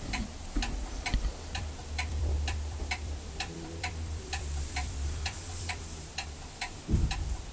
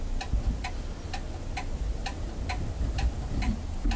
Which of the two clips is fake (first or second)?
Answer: first